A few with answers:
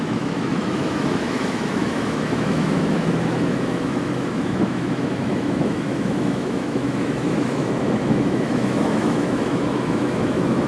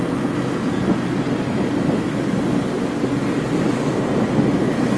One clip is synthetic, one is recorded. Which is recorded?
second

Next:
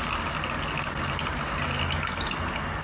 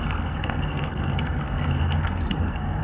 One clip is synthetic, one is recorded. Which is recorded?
first